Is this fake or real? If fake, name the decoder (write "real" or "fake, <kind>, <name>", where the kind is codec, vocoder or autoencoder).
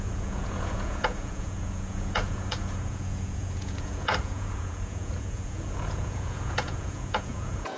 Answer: fake, vocoder, Vocos